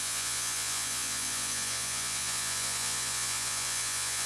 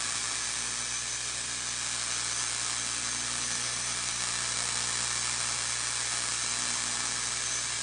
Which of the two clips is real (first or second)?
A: second